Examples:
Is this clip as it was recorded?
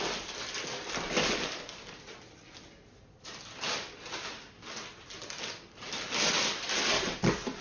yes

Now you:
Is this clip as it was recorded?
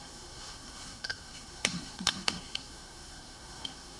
no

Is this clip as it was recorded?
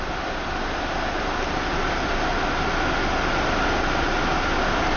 yes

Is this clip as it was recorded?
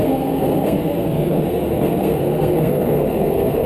no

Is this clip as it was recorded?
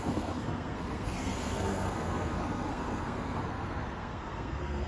no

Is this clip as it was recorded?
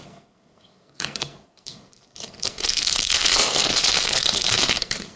no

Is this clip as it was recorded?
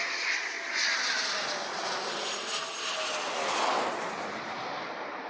yes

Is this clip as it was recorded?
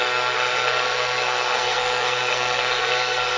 no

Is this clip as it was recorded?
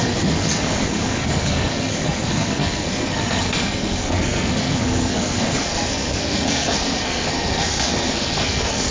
no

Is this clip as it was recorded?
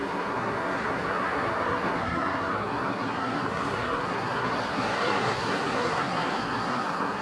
no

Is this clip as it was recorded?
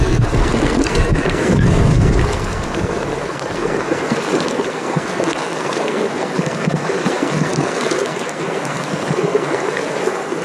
no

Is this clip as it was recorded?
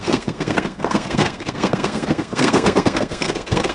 no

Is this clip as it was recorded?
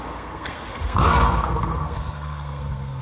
no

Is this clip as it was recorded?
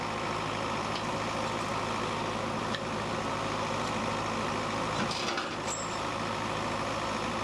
yes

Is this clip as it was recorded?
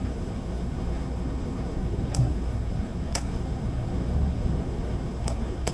no